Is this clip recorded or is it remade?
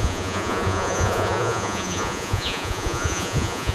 remade